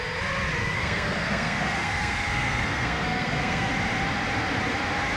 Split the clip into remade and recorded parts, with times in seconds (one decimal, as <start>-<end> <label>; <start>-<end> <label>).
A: 0.0-0.6 recorded; 0.6-3.7 remade; 3.7-5.2 recorded